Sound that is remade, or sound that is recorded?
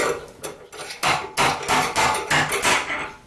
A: recorded